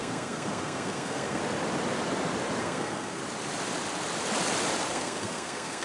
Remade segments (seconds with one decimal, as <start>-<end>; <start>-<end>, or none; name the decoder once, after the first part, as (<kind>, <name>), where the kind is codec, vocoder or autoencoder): 0.0-1.4 (codec, SNAC); 2.6-3.2; 4.9-5.8